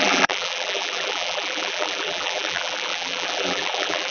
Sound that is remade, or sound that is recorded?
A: remade